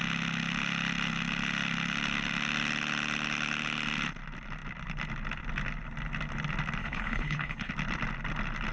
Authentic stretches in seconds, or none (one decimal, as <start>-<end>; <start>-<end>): 0.0-6.8; 7.7-8.7